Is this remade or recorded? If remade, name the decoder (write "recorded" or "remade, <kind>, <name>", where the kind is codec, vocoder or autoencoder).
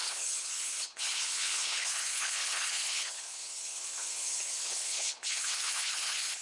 remade, codec, HILCodec